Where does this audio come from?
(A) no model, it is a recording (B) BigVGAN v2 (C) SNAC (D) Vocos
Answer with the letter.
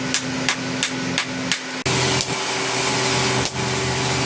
A